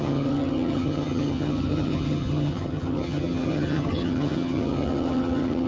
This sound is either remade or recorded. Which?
remade